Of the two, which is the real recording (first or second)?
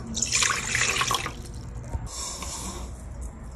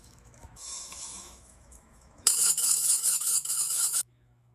first